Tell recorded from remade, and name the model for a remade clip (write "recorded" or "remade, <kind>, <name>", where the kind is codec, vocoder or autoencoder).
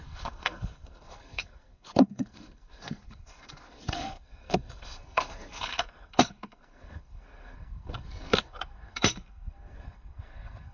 remade, codec, SNAC